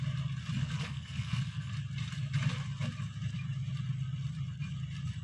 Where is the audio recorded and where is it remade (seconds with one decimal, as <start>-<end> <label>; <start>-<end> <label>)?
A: 0.0-0.6 recorded; 0.6-1.7 remade; 1.7-5.2 recorded